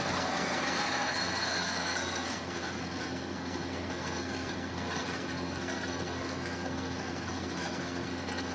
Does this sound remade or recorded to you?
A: remade